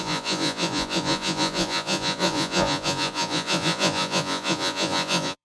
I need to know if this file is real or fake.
fake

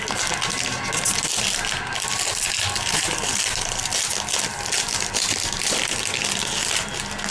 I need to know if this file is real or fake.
real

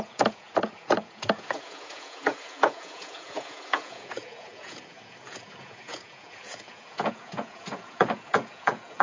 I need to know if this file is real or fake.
fake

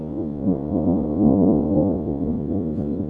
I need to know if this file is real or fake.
fake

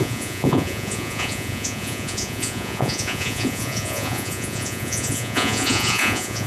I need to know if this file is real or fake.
fake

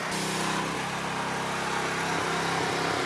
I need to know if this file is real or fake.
real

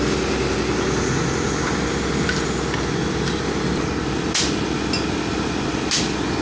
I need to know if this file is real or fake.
real